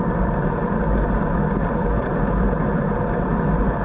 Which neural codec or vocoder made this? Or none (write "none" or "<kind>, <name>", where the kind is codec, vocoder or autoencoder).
none